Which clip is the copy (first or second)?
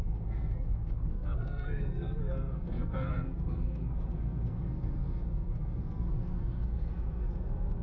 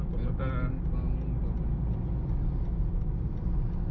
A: first